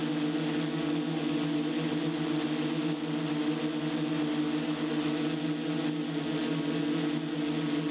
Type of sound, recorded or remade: recorded